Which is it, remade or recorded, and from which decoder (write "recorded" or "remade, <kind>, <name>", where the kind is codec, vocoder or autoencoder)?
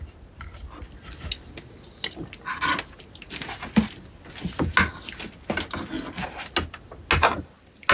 recorded